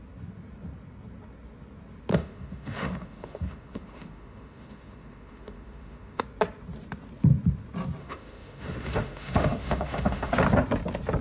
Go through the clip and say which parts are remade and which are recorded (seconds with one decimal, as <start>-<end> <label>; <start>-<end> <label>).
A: 0.0-2.1 recorded; 2.1-6.2 remade; 6.2-8.0 recorded; 8.0-10.3 remade; 10.3-11.2 recorded